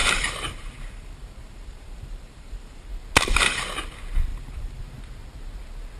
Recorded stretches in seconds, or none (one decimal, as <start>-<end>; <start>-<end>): 2.9-4.3; 4.8-6.0